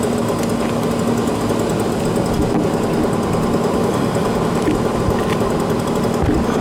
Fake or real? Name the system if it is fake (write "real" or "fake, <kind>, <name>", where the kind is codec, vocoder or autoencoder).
real